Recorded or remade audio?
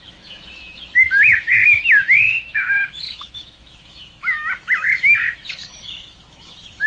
remade